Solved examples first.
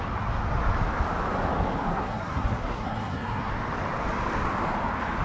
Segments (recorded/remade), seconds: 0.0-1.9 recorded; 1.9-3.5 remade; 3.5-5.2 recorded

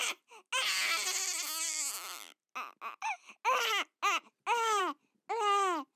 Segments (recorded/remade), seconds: 0.0-6.0 recorded

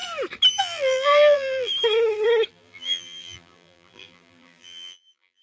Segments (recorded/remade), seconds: 0.0-0.6 recorded; 0.6-1.7 remade; 1.7-2.5 recorded; 2.5-5.4 remade

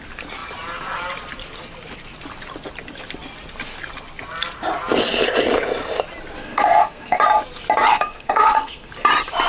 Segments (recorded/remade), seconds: 0.0-6.4 recorded; 6.4-7.2 remade; 7.2-7.9 recorded; 7.9-8.9 remade; 8.9-9.5 recorded

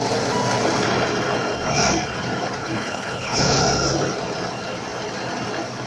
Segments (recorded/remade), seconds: 0.0-2.6 recorded; 2.6-3.6 remade; 3.6-5.9 recorded

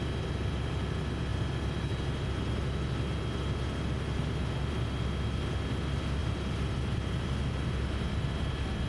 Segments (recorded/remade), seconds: 0.0-8.9 recorded